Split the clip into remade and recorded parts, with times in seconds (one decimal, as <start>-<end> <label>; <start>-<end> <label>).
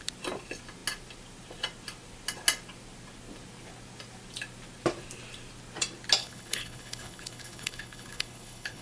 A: 0.0-6.2 recorded; 6.2-8.8 remade